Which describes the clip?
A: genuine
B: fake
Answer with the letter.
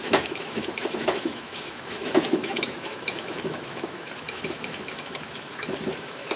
B